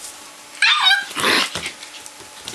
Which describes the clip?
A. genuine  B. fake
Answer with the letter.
A